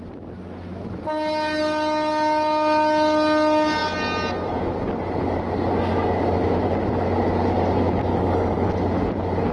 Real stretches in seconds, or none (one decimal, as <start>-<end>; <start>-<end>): 0.0-8.1; 8.7-9.5